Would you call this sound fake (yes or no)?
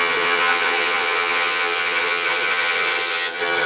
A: yes